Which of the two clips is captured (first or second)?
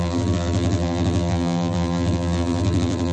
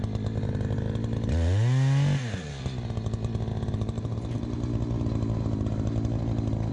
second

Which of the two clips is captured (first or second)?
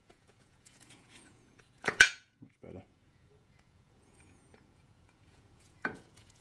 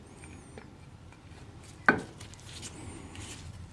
second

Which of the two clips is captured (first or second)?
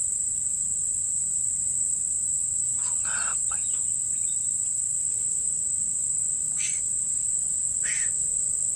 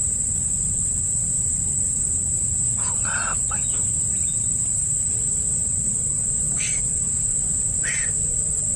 first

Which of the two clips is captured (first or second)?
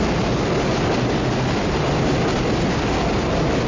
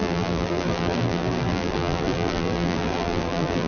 first